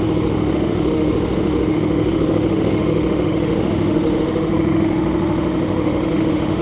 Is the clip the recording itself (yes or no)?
no